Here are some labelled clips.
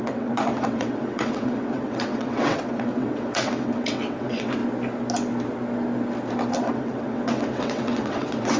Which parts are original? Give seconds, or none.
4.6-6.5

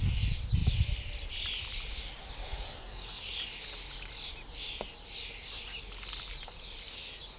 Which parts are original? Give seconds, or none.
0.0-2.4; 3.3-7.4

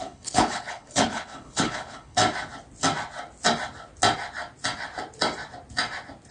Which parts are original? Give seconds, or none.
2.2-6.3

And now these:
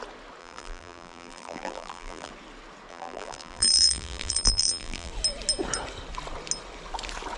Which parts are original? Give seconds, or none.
0.0-0.4; 2.3-2.9; 5.1-7.4

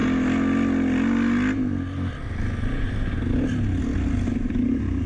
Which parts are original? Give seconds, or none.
0.0-5.1

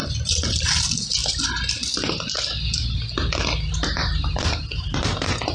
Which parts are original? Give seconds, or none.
0.0-5.5

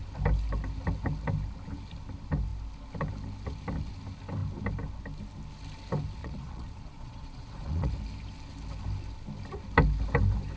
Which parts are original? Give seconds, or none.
0.0-6.2; 7.9-10.6